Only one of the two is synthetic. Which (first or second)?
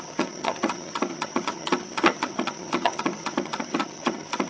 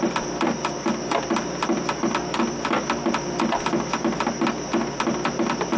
first